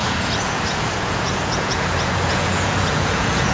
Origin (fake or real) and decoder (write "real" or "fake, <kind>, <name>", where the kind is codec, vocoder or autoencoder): fake, vocoder, Vocos